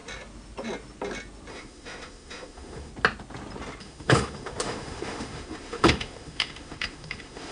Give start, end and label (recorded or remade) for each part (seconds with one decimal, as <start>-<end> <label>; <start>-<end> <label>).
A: 0.0-1.5 recorded; 1.5-2.9 remade; 2.9-3.8 recorded; 3.8-7.5 remade